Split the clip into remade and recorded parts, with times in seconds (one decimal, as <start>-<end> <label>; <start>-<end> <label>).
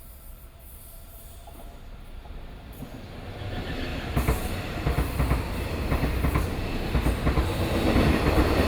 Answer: 0.0-8.7 recorded